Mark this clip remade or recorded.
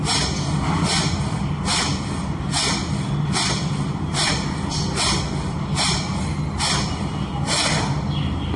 recorded